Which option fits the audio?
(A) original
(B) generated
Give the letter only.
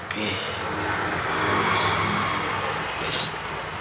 A